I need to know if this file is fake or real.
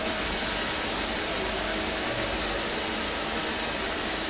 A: real